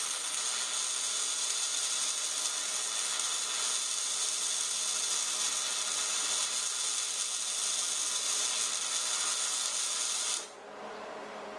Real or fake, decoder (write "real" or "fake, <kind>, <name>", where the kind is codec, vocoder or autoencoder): real